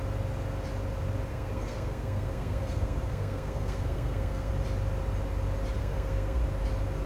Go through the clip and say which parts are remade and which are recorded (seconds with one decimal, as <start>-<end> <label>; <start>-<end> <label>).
0.0-1.3 recorded; 1.3-4.5 remade; 4.5-5.8 recorded; 5.8-6.4 remade; 6.4-7.1 recorded